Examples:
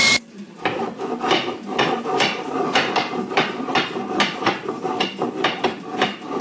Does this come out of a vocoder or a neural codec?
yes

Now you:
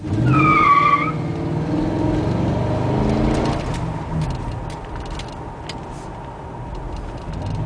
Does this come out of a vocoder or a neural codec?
no